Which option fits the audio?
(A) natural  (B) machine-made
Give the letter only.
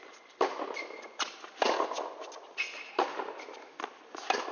A